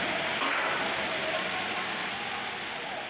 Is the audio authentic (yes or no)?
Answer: yes